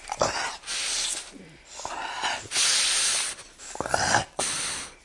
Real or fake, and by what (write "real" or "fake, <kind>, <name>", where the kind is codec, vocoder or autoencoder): real